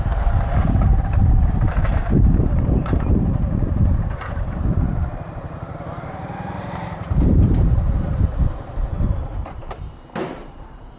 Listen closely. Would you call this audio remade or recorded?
remade